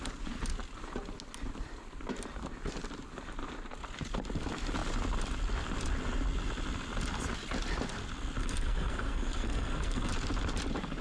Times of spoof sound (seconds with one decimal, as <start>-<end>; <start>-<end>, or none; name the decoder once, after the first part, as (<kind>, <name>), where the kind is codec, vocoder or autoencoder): 8.4-10.1 (codec, SNAC)